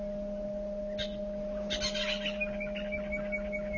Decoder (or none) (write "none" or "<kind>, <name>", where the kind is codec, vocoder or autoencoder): none